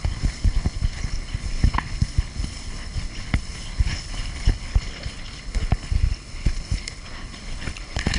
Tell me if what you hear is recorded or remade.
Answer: remade